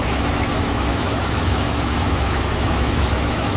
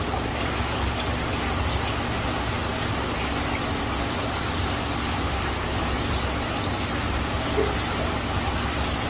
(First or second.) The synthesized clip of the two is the first